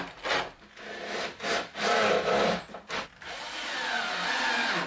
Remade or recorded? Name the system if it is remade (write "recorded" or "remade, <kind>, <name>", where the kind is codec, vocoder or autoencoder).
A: recorded